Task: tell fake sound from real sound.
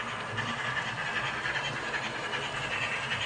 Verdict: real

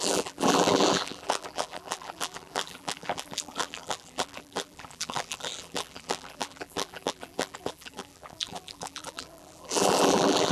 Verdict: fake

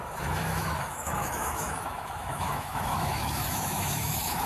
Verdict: fake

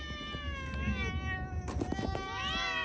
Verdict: real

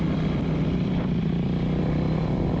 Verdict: fake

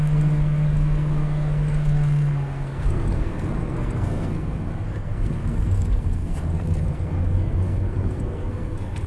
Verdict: fake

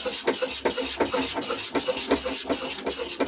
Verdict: real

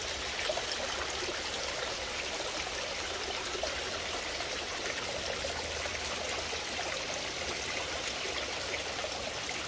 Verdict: real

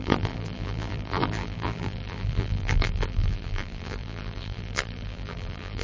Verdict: fake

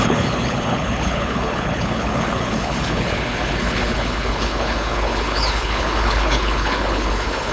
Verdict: fake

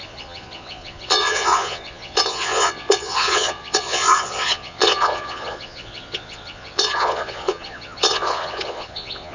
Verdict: fake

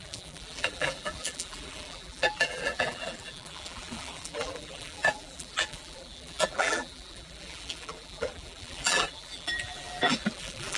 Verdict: fake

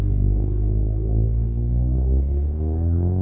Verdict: fake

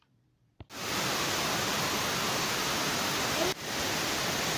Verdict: real